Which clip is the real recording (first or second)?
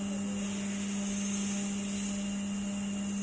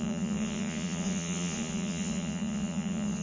first